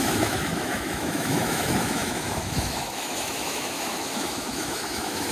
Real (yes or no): no